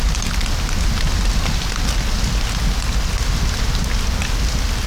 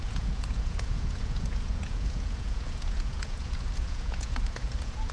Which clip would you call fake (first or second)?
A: second